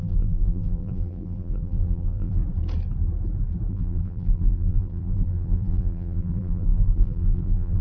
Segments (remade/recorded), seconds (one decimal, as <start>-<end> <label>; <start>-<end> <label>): 0.0-2.4 remade; 2.4-3.7 recorded; 3.7-7.8 remade